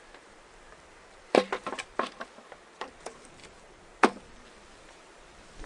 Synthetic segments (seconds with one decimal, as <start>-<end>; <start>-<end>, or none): 0.0-1.5; 2.6-5.7